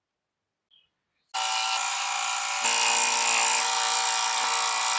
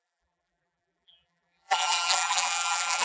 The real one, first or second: first